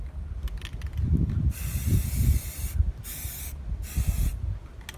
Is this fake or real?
real